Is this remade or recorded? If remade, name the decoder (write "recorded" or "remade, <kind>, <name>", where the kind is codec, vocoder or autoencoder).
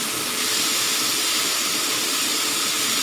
remade, vocoder, BigVGAN v2